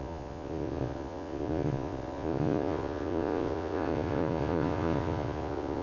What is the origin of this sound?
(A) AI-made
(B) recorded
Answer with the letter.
A